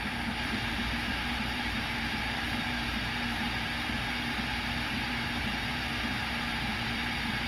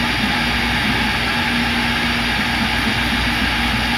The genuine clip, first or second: second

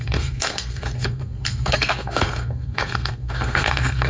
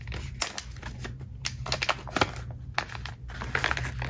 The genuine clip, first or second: second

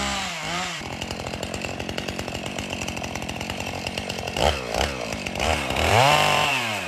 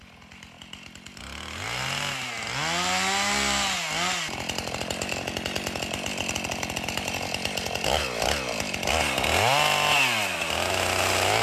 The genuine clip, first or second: second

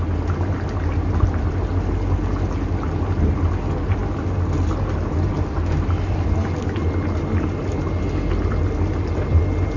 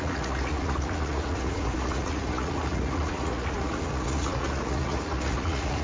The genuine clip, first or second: first